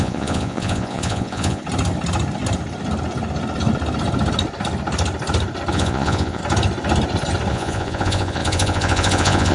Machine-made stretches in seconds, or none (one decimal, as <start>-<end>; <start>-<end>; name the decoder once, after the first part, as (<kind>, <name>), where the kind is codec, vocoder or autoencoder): 0.0-1.6 (vocoder, Vocos); 5.7-6.4; 7.5-9.5